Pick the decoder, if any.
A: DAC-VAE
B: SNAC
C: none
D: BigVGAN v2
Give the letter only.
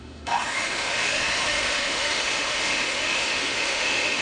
A